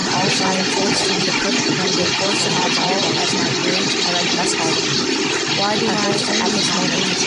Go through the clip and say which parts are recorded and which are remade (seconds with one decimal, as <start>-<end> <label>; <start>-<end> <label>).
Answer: 0.0-3.6 remade; 3.6-7.3 recorded